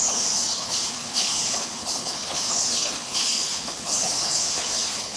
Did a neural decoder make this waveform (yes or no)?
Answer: yes